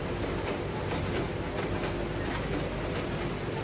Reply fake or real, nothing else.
real